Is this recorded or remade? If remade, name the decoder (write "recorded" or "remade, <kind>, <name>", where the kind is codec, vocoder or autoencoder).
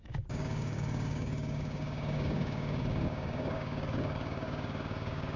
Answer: remade, codec, DAC